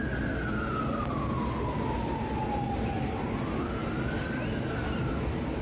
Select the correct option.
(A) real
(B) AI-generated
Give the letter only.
A